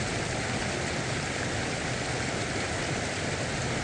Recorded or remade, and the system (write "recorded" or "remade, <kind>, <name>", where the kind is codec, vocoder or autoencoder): recorded